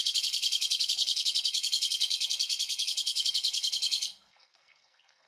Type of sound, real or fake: fake